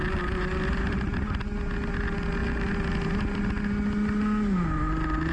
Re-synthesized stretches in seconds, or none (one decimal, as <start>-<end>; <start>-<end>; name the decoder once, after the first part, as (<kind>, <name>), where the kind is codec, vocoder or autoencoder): none